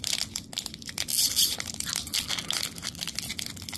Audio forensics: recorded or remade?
recorded